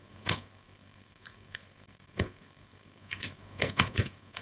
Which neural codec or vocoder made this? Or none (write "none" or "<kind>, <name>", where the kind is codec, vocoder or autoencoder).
codec, SNAC